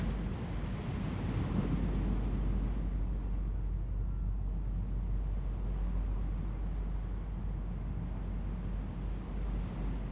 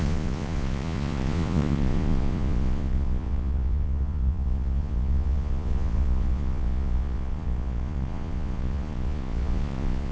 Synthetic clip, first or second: second